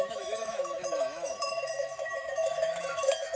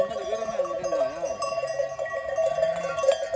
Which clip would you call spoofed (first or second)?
first